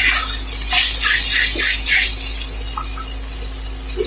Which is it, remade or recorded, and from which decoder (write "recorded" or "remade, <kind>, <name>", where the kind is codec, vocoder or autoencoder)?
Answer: recorded